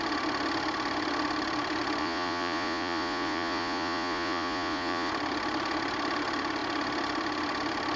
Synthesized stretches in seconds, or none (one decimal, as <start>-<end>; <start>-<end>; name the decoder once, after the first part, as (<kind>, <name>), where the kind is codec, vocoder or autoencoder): 2.0-5.1 (vocoder, Vocos)